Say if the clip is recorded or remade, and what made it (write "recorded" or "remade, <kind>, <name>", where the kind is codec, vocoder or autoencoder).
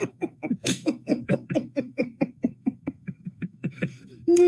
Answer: remade, codec, SNAC